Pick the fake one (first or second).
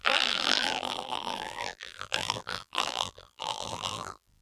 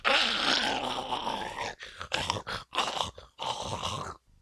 first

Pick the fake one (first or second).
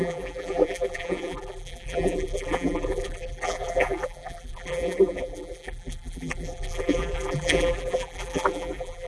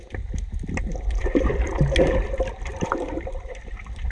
first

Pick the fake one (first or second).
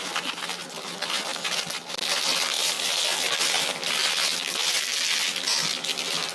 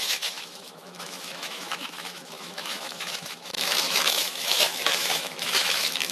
second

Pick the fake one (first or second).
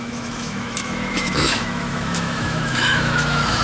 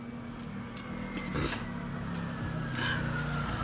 first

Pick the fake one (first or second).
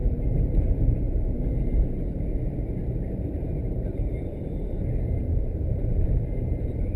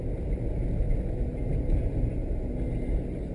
first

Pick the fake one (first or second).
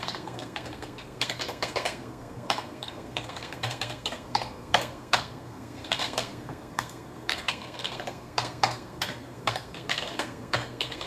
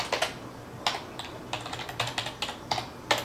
first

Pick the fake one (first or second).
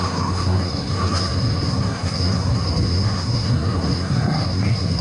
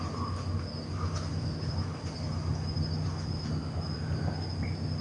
first